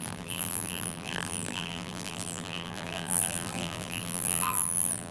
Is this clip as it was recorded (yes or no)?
no